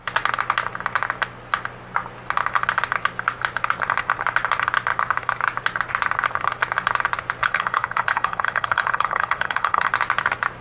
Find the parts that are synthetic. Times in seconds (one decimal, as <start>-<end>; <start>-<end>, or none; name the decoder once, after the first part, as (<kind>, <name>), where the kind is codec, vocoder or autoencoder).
7.4-9.9 (codec, HILCodec)